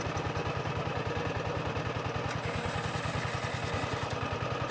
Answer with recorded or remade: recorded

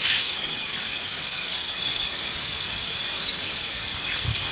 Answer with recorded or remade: remade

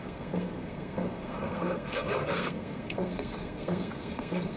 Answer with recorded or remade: remade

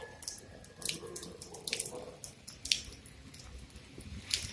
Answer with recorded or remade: recorded